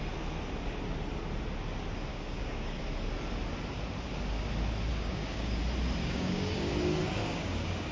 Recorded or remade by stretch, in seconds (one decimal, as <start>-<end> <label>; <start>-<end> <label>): 0.0-2.1 recorded; 2.1-2.8 remade; 2.8-4.9 recorded; 4.9-5.6 remade; 5.6-6.0 recorded; 6.0-6.7 remade; 6.7-7.2 recorded; 7.2-7.9 remade